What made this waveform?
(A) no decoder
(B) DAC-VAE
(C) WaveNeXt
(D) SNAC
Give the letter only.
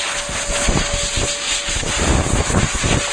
A